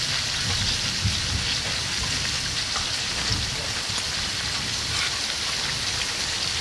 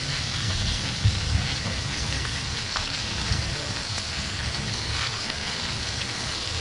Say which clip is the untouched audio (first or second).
first